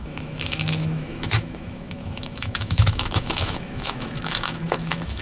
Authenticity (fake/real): fake